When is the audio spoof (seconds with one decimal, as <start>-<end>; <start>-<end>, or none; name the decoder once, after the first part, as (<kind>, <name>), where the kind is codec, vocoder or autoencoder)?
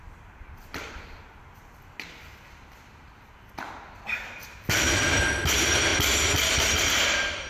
none